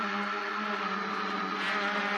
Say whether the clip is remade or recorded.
remade